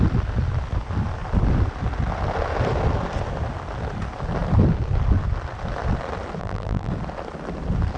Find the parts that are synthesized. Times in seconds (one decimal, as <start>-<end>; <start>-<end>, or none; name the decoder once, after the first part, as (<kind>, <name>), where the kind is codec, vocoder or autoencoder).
6.4-6.9 (vocoder, BigVGAN v2)